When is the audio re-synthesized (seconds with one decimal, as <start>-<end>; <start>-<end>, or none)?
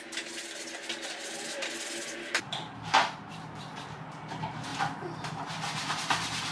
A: none